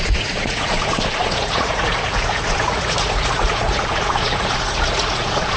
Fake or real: fake